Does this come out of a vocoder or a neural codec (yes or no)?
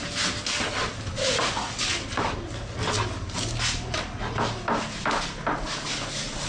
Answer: no